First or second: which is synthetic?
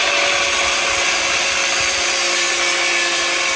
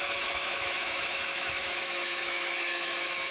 second